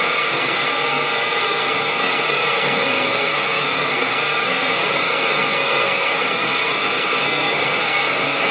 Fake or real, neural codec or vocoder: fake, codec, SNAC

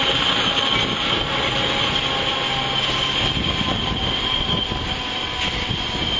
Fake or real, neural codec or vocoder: real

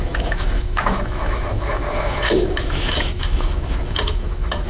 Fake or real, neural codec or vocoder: fake, autoencoder, DAC-VAE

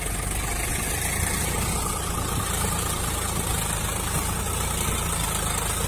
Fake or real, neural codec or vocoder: real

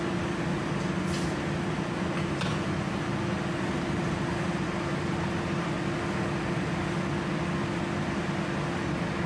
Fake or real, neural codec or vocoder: real